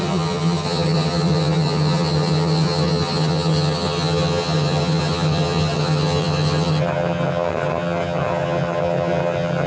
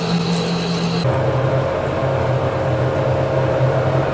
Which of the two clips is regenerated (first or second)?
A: first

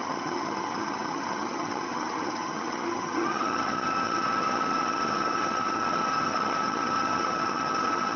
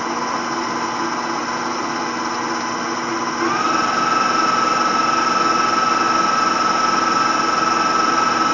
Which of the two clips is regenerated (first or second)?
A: first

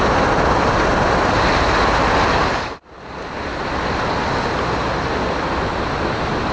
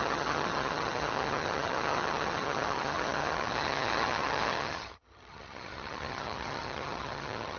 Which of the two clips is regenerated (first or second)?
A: second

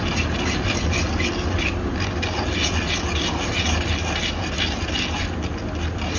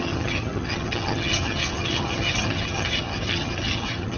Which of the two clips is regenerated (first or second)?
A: second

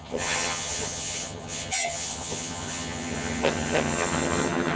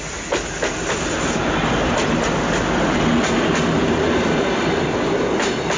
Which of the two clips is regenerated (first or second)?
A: first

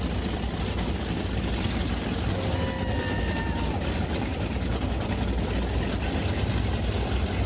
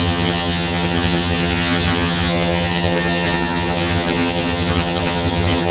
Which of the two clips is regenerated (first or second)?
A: second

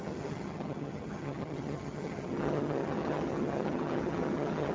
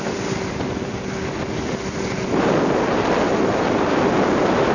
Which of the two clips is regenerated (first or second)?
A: first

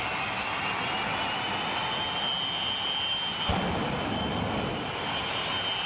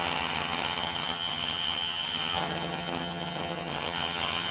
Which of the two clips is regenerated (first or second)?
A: second